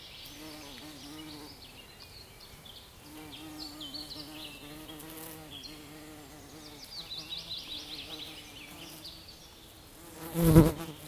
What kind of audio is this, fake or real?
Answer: real